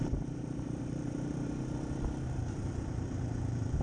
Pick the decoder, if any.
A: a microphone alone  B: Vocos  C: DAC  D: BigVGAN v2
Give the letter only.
D